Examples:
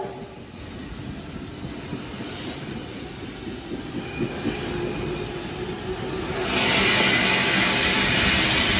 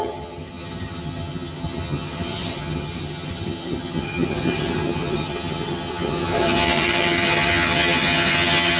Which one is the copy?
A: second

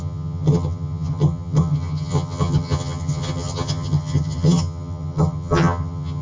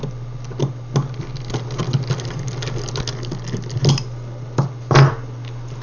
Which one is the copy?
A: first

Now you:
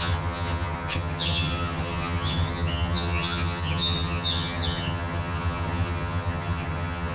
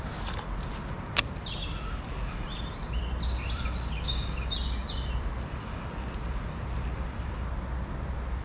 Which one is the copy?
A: first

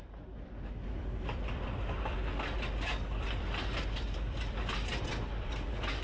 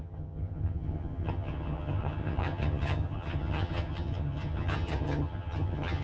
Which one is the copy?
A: second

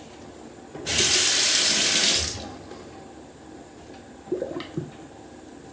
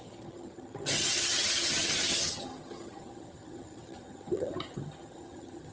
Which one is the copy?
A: second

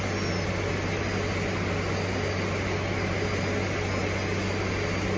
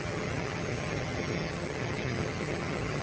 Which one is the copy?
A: second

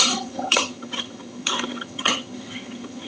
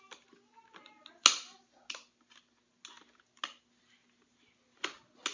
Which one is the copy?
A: first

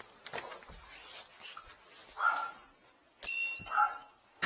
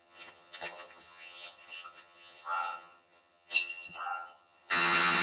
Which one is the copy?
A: second